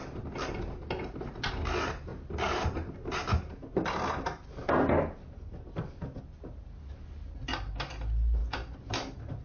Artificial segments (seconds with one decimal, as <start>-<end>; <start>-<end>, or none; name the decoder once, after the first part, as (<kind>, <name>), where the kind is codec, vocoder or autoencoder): none